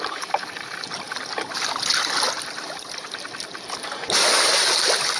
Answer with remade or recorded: recorded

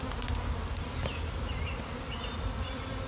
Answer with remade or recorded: recorded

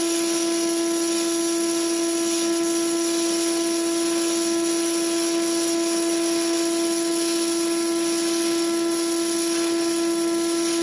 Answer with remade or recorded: recorded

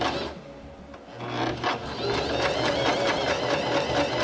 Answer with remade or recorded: recorded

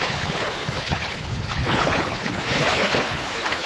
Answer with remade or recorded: remade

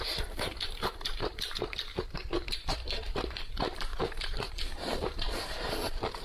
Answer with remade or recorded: remade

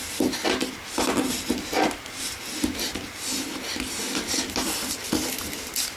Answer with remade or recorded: recorded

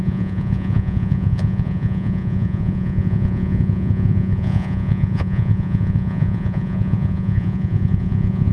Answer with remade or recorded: remade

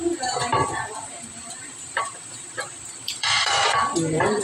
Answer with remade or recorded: remade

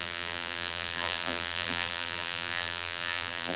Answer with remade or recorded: remade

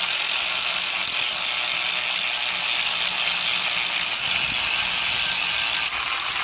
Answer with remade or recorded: recorded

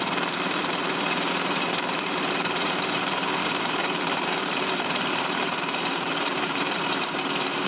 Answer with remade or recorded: remade